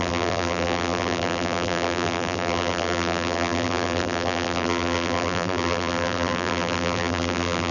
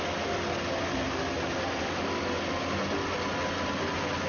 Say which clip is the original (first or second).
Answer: second